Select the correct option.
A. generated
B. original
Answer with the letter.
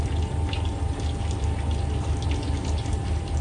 B